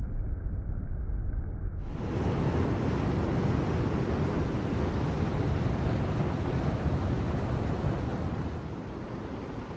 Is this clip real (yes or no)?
yes